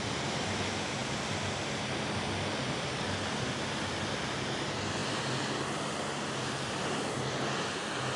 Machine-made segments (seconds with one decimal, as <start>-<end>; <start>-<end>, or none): none